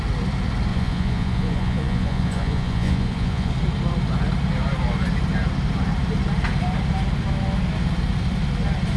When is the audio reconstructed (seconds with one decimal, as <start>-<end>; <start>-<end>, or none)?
0.7-3.5